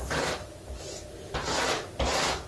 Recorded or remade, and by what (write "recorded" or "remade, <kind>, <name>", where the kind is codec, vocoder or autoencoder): recorded